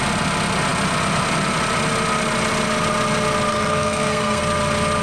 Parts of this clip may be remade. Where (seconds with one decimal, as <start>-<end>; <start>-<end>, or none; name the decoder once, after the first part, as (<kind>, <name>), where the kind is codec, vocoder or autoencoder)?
3.5-4.4 (codec, SNAC)